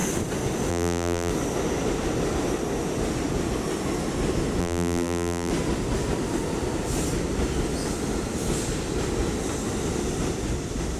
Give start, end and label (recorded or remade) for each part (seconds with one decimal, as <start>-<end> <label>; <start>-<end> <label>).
0.0-0.7 recorded; 0.7-1.3 remade; 1.3-4.6 recorded; 4.6-5.5 remade; 5.5-11.0 recorded